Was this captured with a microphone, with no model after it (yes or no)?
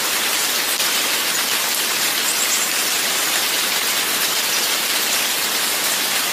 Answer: yes